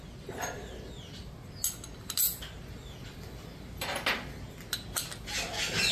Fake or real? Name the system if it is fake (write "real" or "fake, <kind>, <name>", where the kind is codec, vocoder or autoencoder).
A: real